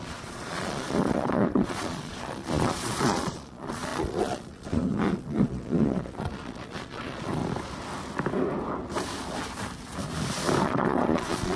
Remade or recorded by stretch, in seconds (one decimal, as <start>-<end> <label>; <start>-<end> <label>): 0.0-7.4 remade; 7.4-10.6 recorded; 10.6-11.6 remade